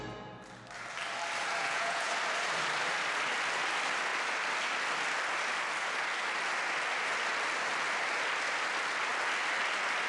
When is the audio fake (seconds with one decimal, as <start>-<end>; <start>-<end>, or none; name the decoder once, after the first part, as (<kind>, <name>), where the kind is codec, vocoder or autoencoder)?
1.6-2.1 (vocoder, Vocos)